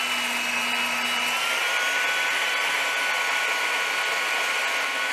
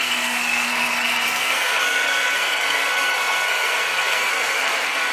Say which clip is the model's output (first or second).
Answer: second